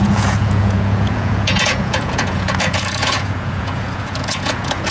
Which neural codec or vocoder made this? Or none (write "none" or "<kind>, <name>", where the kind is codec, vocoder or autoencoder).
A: vocoder, Vocos